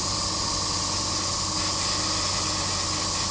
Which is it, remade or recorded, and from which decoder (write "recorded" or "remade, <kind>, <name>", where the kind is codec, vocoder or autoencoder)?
recorded